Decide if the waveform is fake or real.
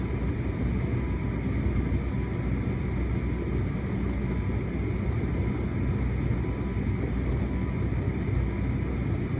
real